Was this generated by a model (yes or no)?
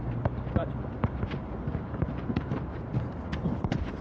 yes